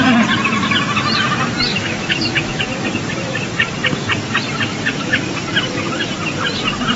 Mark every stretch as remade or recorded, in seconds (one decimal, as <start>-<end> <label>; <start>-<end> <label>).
0.0-1.7 recorded; 1.7-2.6 remade; 2.6-7.0 recorded